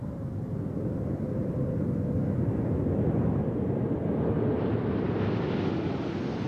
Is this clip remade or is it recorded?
recorded